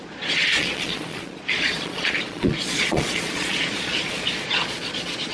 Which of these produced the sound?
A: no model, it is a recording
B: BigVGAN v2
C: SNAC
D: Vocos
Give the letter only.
D